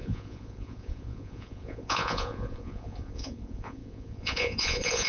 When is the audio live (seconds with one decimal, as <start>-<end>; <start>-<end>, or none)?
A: none